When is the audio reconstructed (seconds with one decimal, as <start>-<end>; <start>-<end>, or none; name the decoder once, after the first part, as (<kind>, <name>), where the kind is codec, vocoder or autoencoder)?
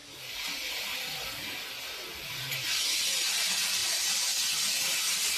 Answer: none